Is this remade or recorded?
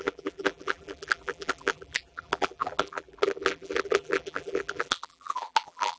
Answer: remade